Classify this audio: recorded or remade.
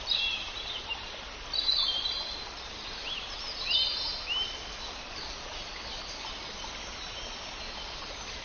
recorded